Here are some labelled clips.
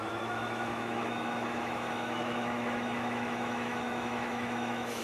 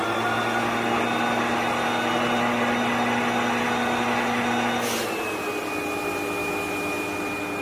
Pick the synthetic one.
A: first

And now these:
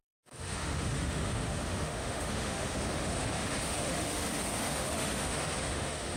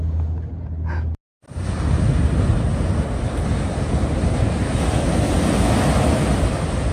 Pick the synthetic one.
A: first